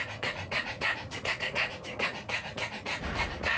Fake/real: fake